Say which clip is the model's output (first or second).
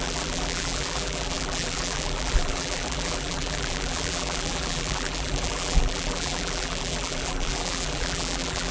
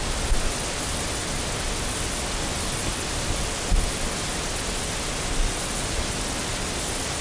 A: first